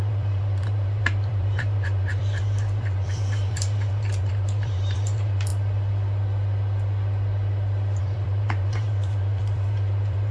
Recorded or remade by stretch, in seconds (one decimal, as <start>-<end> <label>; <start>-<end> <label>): 0.0-5.5 remade; 5.5-8.0 recorded; 8.0-10.3 remade